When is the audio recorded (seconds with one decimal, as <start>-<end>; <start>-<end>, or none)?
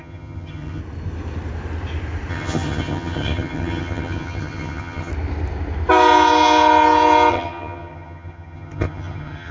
0.8-2.3; 5.1-7.3